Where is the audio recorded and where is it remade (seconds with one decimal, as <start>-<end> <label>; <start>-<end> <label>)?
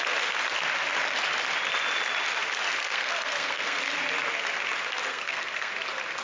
0.0-2.8 recorded; 2.8-3.8 remade; 3.8-5.1 recorded; 5.1-5.7 remade; 5.7-6.2 recorded